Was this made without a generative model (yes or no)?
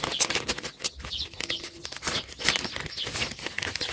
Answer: yes